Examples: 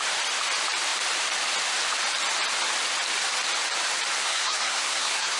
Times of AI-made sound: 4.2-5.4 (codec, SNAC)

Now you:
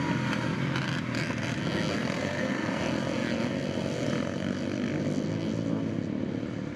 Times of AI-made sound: 1.9-2.8 (codec, SNAC)

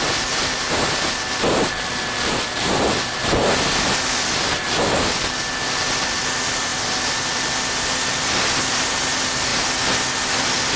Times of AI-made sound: none